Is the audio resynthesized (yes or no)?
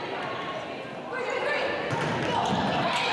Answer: no